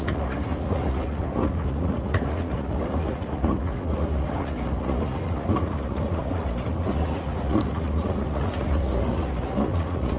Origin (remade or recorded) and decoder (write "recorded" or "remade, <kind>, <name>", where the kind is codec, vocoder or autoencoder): remade, vocoder, Vocos